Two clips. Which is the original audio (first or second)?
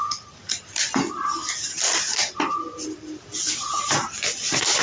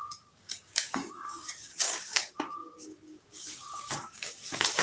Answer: first